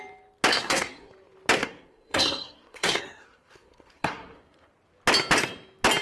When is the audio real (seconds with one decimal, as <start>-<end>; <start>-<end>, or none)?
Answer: 0.0-0.5; 1.1-1.6; 4.7-6.0

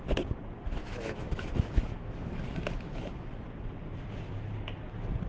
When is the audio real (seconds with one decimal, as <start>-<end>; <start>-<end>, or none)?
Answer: 0.0-0.8; 3.3-5.3

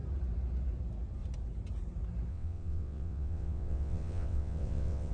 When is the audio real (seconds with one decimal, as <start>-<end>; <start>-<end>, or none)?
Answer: 0.0-2.3